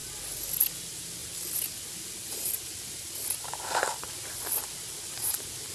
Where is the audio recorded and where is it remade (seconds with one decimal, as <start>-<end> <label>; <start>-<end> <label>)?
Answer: 0.0-5.7 recorded